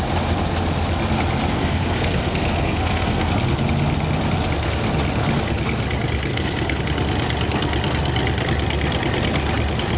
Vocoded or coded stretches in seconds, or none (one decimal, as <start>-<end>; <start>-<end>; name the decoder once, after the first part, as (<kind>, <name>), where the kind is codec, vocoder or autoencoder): 1.5-3.3 (codec, SNAC); 6.3-6.8